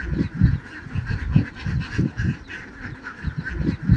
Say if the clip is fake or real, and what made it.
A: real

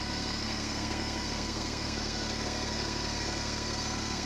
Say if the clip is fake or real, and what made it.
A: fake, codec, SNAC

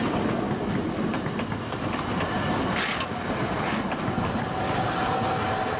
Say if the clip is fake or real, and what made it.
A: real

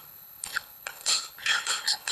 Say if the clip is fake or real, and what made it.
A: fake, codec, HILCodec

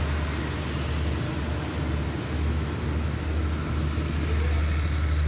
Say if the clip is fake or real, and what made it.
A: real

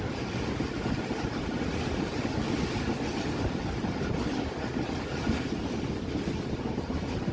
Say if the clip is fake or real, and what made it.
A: real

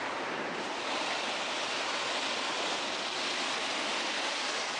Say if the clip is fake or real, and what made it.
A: real